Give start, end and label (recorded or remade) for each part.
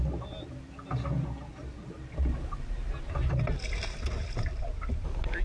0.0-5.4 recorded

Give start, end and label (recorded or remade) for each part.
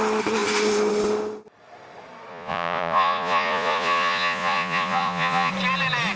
0.0-2.3 recorded; 2.3-5.5 remade; 5.5-6.2 recorded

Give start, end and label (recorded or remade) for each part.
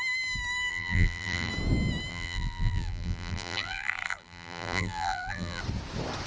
0.0-0.7 recorded; 0.7-1.5 remade; 1.5-2.1 recorded; 2.1-5.6 remade; 5.6-6.3 recorded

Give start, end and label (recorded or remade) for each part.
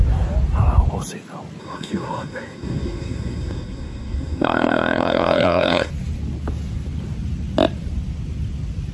0.0-1.6 recorded; 1.6-5.9 remade; 5.9-8.9 recorded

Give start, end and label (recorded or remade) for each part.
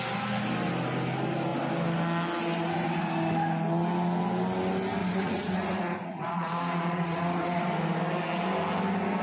0.0-5.0 recorded; 5.0-7.6 remade; 7.6-9.2 recorded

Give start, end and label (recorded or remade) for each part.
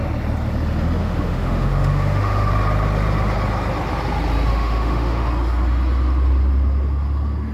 0.0-1.0 recorded; 1.0-2.5 remade; 2.5-4.5 recorded; 4.5-5.3 remade; 5.3-7.5 recorded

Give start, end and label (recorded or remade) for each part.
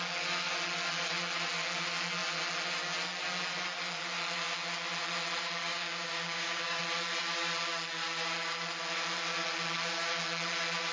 0.0-5.6 recorded; 5.6-6.8 remade; 6.8-10.9 recorded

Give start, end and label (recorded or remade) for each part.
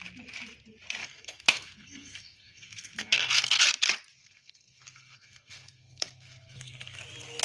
0.0-1.0 recorded; 1.0-3.6 remade; 3.6-4.2 recorded; 4.2-7.0 remade; 7.0-7.4 recorded